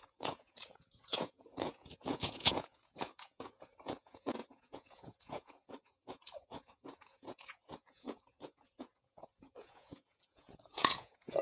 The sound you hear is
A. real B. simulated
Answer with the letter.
B